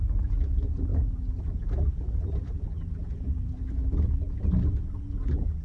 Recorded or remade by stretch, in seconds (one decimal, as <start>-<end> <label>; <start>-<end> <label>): 0.0-5.6 recorded